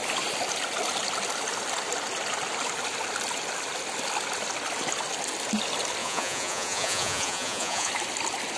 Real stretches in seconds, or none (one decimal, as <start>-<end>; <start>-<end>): 0.0-6.0; 7.9-8.6

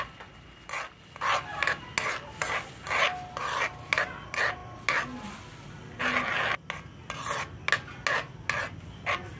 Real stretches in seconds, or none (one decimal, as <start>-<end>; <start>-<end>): 0.0-9.4

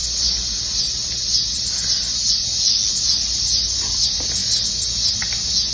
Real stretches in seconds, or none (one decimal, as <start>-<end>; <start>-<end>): 0.0-5.7

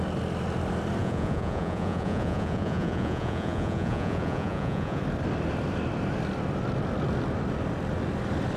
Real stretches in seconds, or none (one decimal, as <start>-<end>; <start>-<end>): 0.0-1.0; 5.0-8.6

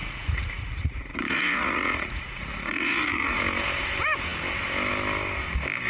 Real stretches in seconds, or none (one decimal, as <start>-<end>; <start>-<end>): 3.4-5.9

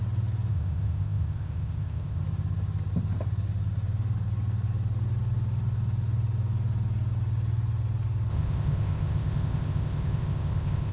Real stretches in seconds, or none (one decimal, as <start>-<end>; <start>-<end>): 0.0-0.5; 2.2-8.3

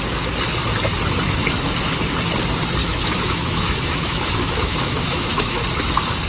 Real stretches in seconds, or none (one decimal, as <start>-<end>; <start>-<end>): 0.0-2.8; 5.6-6.3

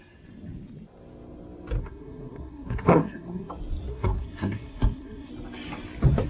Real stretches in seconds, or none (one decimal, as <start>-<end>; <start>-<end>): 0.0-1.8; 3.5-3.9; 5.3-6.3